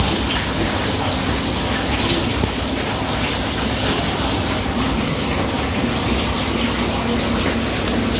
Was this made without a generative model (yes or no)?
yes